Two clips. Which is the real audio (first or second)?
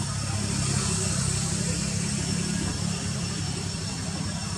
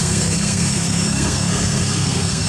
first